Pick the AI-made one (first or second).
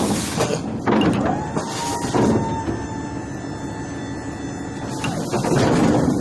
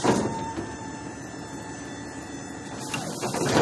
second